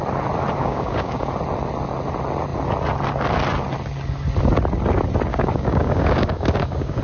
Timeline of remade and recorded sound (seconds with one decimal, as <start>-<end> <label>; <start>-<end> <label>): 0.0-0.6 recorded; 0.6-1.3 remade; 1.3-5.3 recorded; 5.3-7.0 remade